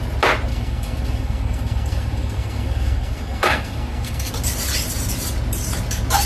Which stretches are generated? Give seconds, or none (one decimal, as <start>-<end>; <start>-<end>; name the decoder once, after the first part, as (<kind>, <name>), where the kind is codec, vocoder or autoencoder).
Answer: 0.5-4.3 (codec, SNAC)